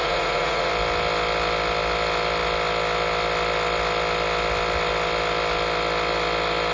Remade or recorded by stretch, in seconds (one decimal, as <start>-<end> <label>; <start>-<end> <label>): 0.0-0.7 remade; 0.7-6.7 recorded